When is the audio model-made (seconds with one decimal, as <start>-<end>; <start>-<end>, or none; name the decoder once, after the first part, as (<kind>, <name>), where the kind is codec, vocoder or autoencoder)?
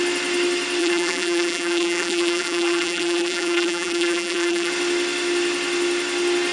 0.8-4.7 (vocoder, BigVGAN v2)